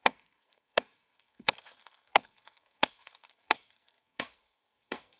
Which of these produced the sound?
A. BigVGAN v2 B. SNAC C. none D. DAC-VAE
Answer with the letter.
B